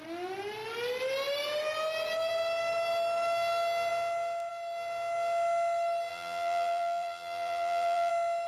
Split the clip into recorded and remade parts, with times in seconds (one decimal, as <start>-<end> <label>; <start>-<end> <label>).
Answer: 0.0-6.1 recorded; 6.1-8.1 remade; 8.1-8.5 recorded